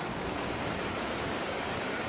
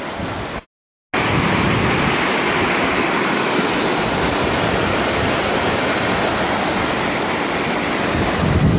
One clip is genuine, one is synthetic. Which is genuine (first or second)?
second